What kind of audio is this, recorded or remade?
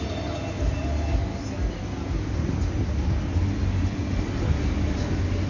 recorded